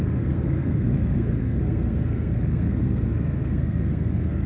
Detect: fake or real fake